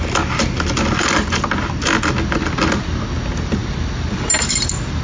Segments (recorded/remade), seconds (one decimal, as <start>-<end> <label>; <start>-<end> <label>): 0.0-5.0 recorded

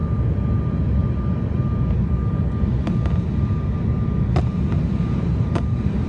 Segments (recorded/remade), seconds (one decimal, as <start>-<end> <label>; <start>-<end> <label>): 0.0-0.6 recorded; 0.6-1.0 remade; 1.0-4.4 recorded; 4.4-6.1 remade

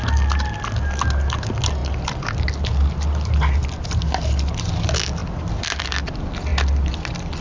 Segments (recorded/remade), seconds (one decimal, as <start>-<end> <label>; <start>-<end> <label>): 0.0-7.4 recorded

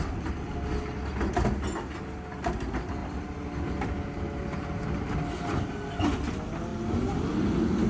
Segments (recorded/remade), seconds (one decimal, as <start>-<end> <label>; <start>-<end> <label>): 0.0-7.9 recorded